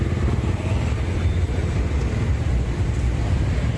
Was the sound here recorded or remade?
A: recorded